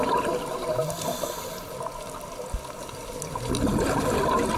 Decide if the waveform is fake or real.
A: real